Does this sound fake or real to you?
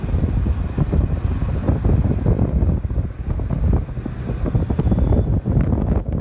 real